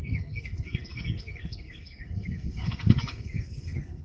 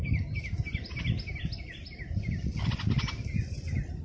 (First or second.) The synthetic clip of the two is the first